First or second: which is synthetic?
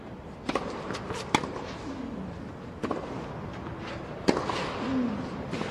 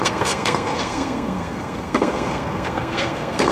second